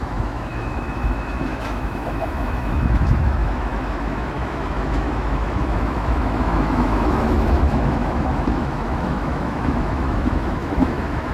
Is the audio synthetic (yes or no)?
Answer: yes